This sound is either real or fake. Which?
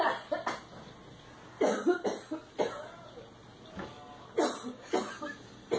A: real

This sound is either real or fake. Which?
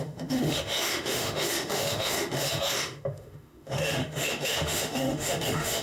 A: fake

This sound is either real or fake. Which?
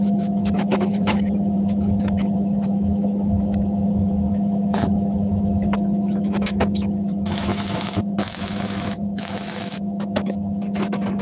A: fake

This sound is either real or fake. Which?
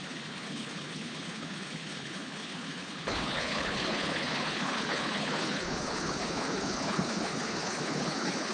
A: fake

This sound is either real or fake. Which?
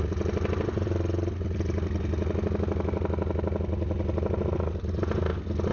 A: real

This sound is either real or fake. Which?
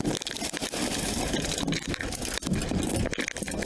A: real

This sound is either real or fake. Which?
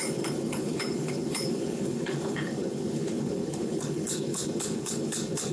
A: fake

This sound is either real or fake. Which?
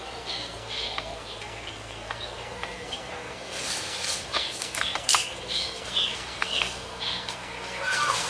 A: fake